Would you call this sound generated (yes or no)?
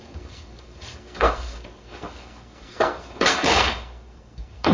yes